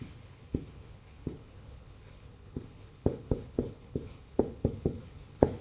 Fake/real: fake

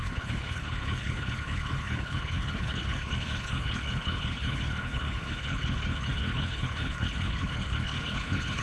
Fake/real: fake